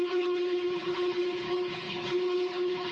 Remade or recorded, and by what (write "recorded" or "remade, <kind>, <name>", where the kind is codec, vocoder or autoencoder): remade, codec, HILCodec